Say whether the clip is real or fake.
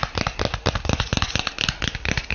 real